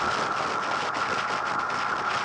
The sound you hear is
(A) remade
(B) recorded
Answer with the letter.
B